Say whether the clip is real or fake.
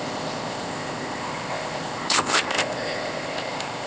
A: fake